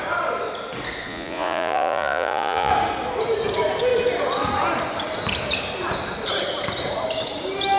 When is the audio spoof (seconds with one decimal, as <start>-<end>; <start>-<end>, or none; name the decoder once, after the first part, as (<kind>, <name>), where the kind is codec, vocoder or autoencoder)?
1.1-2.7 (vocoder, Vocos)